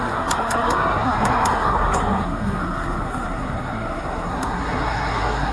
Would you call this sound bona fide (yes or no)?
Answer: no